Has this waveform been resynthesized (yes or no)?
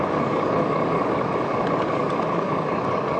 yes